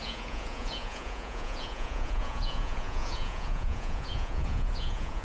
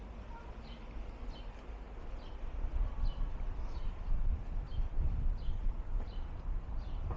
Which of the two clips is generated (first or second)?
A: first